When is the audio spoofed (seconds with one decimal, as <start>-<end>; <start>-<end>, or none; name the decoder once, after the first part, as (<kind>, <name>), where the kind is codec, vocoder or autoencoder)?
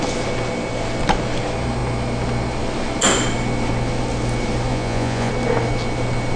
4.7-5.3 (vocoder, Vocos)